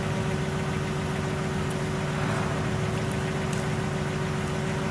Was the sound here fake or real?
real